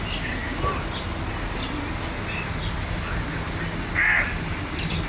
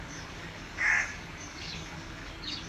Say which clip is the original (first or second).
first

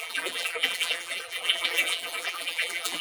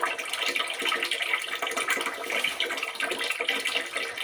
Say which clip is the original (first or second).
second